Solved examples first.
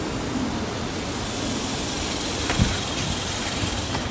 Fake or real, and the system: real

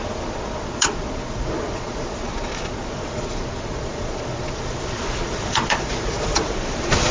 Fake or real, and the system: fake, vocoder, Vocos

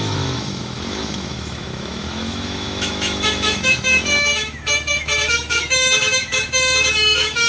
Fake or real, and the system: fake, autoencoder, DAC-VAE